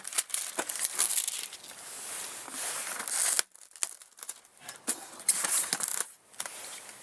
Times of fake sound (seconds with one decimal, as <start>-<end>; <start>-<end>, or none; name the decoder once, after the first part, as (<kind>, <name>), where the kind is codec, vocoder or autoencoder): none